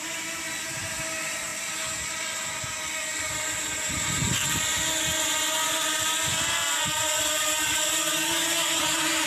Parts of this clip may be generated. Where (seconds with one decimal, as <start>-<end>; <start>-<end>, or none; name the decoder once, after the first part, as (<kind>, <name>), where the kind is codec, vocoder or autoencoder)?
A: 0.0-1.5 (vocoder, BigVGAN v2); 3.6-4.4; 7.2-9.3

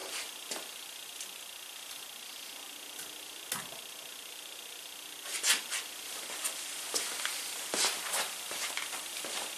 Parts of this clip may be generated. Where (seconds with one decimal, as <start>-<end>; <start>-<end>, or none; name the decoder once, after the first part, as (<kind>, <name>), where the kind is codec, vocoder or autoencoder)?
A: none